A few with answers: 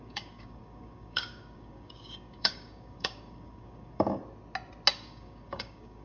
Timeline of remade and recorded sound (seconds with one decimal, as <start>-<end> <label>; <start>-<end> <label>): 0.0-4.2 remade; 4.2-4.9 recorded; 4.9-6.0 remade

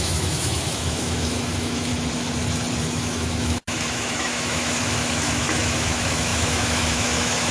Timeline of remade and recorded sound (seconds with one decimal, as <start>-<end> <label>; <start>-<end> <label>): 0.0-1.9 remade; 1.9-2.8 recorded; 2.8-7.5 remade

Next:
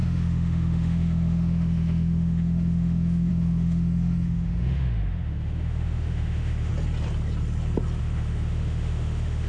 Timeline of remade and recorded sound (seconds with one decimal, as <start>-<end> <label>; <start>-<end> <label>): 0.0-6.7 remade; 6.7-8.0 recorded; 8.0-9.5 remade

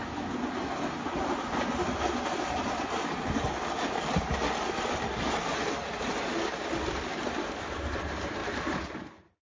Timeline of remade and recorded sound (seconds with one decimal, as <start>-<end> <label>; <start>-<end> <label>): 0.0-8.4 recorded; 8.4-9.5 remade

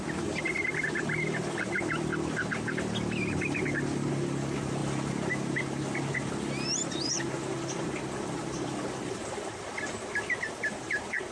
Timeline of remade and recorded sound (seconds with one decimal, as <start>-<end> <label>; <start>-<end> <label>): 0.0-11.3 recorded

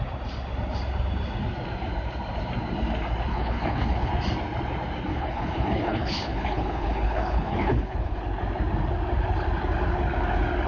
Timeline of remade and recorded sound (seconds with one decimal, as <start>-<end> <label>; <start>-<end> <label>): 0.0-3.3 recorded; 3.3-4.1 remade; 4.1-5.1 recorded; 5.1-8.2 remade; 8.2-10.7 recorded

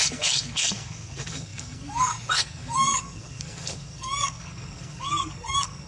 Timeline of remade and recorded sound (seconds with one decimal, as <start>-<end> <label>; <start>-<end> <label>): 0.0-5.9 remade

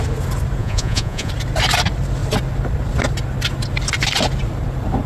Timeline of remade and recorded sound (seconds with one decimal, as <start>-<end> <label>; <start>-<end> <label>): 0.0-0.6 recorded; 0.6-1.3 remade; 1.3-5.1 recorded